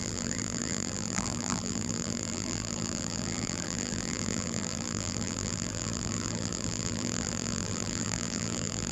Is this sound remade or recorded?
remade